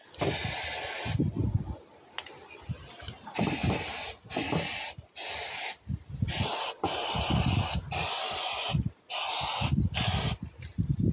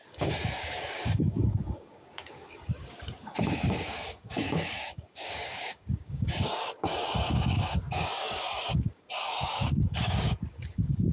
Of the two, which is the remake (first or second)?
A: second